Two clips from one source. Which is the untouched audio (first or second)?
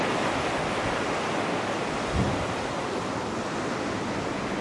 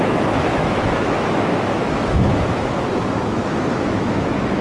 first